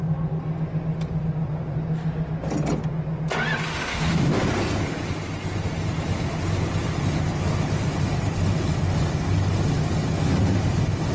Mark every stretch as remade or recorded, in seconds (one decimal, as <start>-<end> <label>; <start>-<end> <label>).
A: 0.0-3.7 recorded; 3.7-4.4 remade; 4.4-11.1 recorded